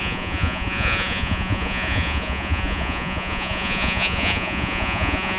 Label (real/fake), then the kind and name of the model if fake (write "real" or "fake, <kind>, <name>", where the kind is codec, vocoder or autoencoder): fake, vocoder, Vocos